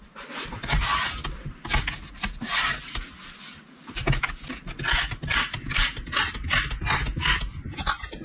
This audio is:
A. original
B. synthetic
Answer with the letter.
A